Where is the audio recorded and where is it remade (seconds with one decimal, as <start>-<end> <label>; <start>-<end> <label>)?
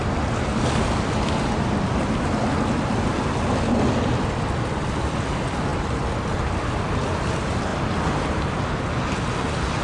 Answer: 0.0-9.8 recorded